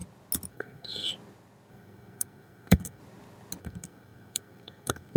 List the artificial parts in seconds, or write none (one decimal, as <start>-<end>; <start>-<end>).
0.5-1.1; 1.7-3.0; 3.6-5.2